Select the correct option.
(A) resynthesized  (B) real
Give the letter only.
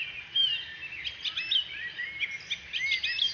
B